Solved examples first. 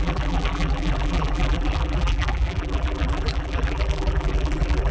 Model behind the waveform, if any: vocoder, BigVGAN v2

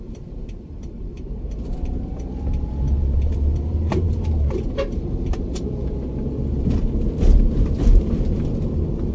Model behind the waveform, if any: vocoder, BigVGAN v2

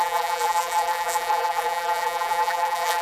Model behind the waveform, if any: vocoder, BigVGAN v2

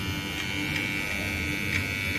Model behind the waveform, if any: none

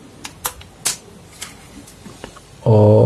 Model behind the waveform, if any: none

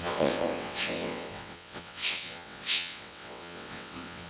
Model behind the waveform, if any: vocoder, WaveNeXt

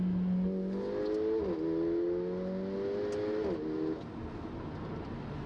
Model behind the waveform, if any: none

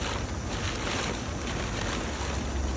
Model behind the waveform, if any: none